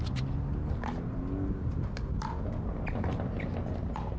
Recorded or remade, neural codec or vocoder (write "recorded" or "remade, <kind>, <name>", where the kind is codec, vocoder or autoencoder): recorded